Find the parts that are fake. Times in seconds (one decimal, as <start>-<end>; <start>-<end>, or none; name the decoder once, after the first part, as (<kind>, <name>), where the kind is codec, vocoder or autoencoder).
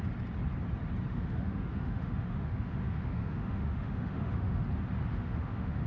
1.1-4.6 (autoencoder, DAC-VAE); 5.1-5.9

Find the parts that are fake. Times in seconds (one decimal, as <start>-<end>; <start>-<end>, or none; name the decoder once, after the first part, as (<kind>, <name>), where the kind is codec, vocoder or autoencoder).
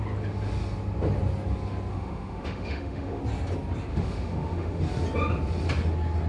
1.9-3.2 (autoencoder, DAC-VAE); 3.9-4.8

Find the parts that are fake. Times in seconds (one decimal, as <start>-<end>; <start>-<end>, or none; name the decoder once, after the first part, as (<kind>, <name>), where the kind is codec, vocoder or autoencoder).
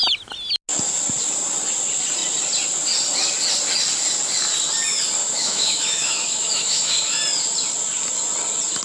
5.2-7.2 (autoencoder, DAC-VAE)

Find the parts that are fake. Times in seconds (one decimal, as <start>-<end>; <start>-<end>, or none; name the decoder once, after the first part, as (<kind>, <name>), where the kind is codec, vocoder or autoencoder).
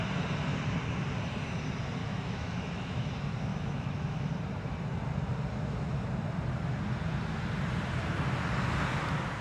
2.0-3.1 (autoencoder, DAC-VAE); 3.5-4.3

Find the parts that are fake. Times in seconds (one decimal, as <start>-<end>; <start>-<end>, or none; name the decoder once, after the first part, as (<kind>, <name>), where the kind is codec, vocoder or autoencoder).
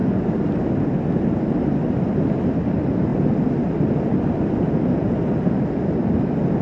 none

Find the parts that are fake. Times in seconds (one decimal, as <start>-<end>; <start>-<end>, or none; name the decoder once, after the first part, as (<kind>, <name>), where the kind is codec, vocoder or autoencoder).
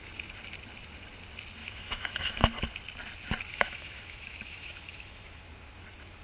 1.6-2.4 (autoencoder, DAC-VAE); 3.5-5.4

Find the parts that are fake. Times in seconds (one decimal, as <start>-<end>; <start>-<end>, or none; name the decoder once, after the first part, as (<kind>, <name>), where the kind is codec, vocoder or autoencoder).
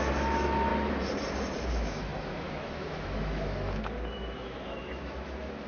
0.0-0.7 (autoencoder, DAC-VAE); 1.7-5.7